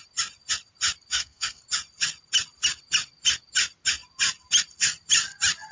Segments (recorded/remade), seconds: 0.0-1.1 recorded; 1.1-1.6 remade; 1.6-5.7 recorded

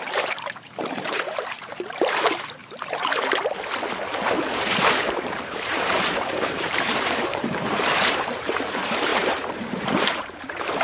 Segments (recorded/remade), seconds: 0.0-2.6 remade; 2.6-4.6 recorded; 4.6-10.8 remade

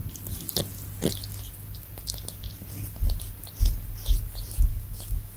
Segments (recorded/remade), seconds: 0.0-4.7 recorded; 4.7-5.4 remade

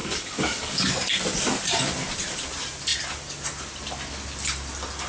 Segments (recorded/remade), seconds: 0.0-0.9 remade; 0.9-5.1 recorded

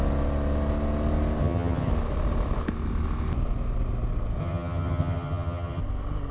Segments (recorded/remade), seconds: 0.0-1.4 recorded; 1.4-1.9 remade; 1.9-4.4 recorded; 4.4-5.8 remade; 5.8-6.3 recorded

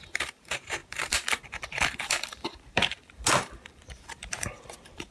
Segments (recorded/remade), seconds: 0.0-5.1 remade

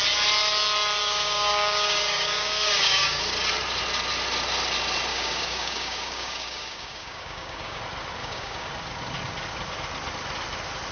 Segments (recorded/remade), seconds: 0.0-1.0 recorded; 1.0-3.2 remade; 3.2-5.1 recorded; 5.1-7.8 remade; 7.8-8.2 recorded; 8.2-8.7 remade; 8.7-10.9 recorded

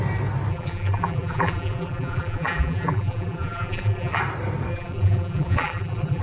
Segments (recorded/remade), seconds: 0.0-0.5 recorded; 0.5-4.2 remade; 4.2-4.7 recorded; 4.7-6.2 remade